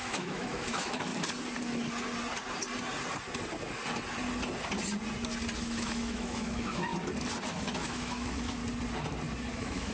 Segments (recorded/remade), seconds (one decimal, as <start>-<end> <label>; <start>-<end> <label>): 0.0-1.1 remade; 1.1-5.6 recorded; 5.6-6.9 remade; 6.9-7.5 recorded; 7.5-8.6 remade; 8.6-9.5 recorded; 9.5-9.9 remade